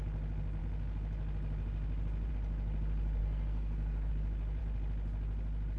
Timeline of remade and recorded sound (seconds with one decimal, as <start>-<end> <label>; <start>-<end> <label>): 0.0-3.2 recorded; 3.2-4.1 remade; 4.1-5.8 recorded